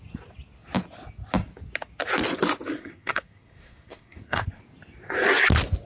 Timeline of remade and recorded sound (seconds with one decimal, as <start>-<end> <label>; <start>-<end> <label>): 0.0-2.8 recorded; 2.8-4.6 remade; 4.6-5.9 recorded